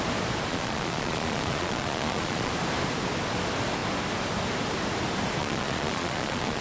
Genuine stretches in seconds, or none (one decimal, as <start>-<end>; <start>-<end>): 0.0-0.5; 2.5-5.4